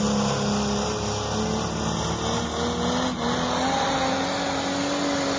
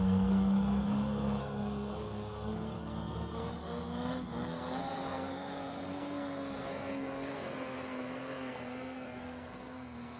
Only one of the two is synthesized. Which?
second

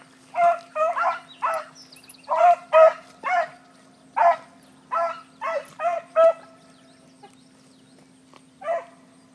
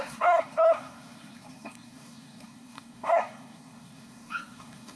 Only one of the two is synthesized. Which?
second